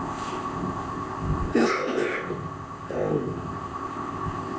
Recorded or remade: remade